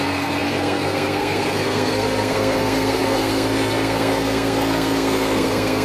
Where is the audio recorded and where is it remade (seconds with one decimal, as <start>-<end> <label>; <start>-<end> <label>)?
0.0-5.8 remade